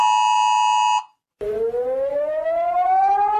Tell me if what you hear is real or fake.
real